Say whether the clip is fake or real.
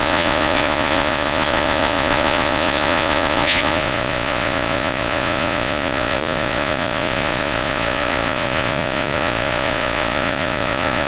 fake